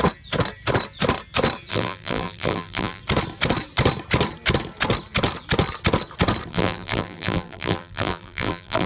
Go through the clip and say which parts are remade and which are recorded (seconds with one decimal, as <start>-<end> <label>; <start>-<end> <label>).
0.0-1.7 recorded; 1.7-3.0 remade; 3.0-6.5 recorded; 6.5-8.9 remade